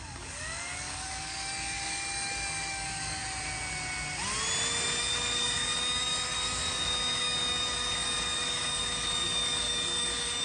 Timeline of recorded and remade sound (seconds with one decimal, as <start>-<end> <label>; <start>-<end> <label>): 0.0-3.2 remade; 3.2-5.0 recorded; 5.0-10.4 remade